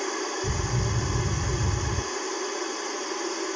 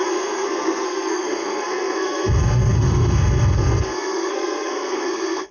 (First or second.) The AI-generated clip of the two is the second